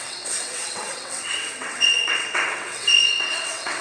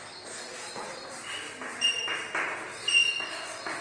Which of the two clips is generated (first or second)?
first